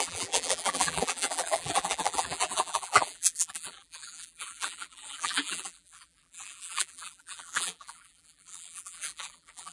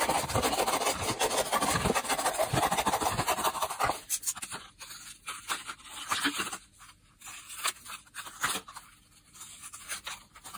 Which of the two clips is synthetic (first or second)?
first